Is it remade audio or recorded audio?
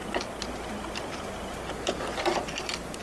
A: recorded